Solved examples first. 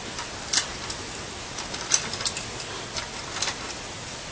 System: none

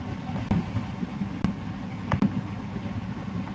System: none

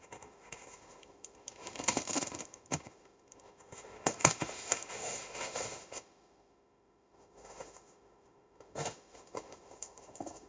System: autoencoder, DAC-VAE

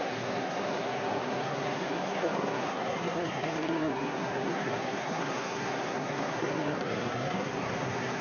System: codec, SNAC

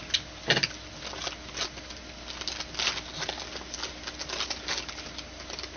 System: none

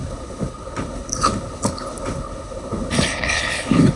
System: codec, HILCodec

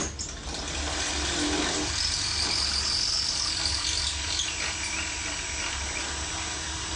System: none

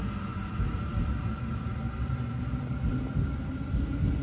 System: none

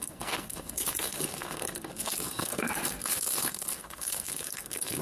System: codec, SNAC